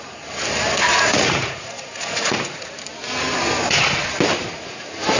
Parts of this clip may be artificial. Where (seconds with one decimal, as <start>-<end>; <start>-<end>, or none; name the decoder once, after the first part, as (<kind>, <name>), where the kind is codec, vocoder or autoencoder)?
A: 0.9-2.7 (vocoder, Vocos)